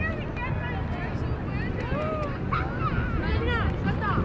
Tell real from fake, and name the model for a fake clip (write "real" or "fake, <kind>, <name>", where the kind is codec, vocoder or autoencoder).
real